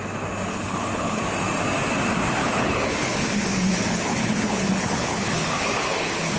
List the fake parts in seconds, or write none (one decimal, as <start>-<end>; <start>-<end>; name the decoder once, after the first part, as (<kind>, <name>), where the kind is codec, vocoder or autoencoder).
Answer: 0.5-1.2 (codec, HILCodec); 2.4-6.4